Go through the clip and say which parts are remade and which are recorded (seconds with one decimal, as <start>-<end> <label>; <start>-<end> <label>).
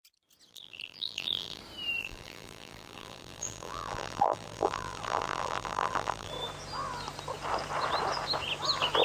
0.0-0.5 recorded; 0.5-1.6 remade; 1.6-2.0 recorded; 2.0-6.3 remade; 6.3-9.0 recorded